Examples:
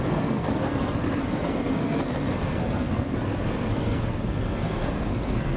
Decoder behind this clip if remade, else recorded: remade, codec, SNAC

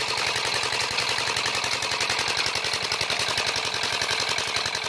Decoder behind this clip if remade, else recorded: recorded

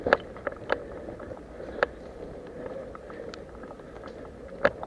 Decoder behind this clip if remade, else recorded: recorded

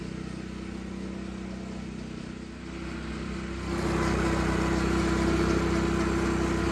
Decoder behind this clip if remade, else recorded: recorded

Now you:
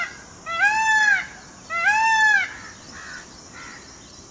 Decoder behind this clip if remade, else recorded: recorded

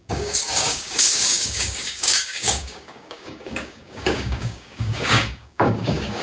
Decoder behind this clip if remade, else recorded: remade, codec, DAC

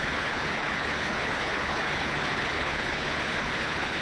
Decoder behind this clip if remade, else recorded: remade, codec, HILCodec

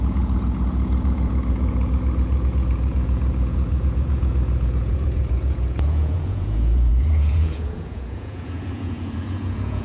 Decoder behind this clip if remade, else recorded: remade, vocoder, Vocos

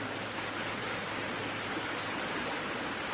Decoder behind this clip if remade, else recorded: recorded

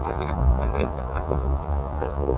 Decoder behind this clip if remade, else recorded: remade, vocoder, Vocos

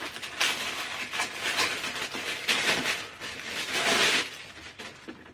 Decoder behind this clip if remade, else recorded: recorded